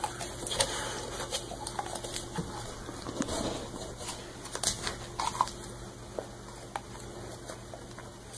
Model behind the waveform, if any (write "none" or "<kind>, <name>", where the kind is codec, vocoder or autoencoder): none